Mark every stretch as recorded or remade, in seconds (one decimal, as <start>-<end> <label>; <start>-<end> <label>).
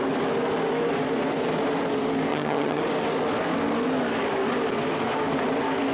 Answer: 0.0-2.3 recorded; 2.3-2.8 remade; 2.8-5.9 recorded